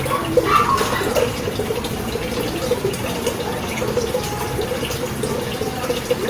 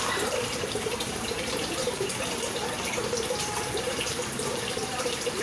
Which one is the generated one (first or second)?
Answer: second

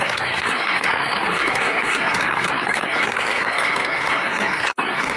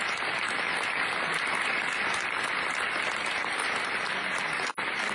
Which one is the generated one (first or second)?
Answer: first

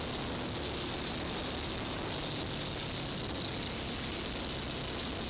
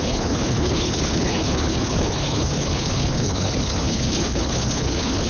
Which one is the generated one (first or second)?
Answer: second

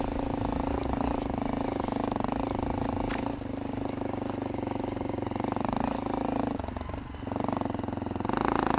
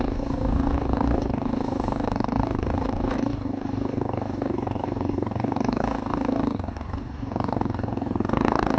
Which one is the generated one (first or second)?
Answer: second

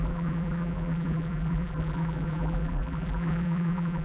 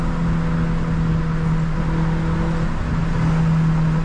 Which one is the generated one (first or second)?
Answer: first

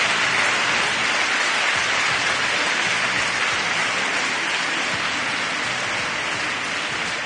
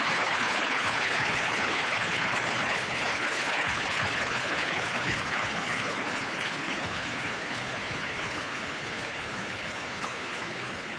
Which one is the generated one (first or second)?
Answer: second